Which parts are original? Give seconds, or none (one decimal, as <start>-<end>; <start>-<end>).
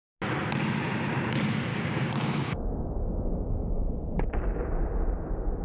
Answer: 0.0-1.7; 3.9-5.6